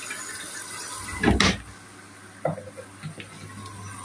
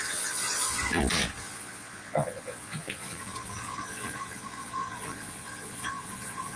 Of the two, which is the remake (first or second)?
second